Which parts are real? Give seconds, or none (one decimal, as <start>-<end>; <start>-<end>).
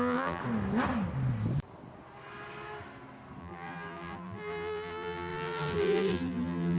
0.4-3.4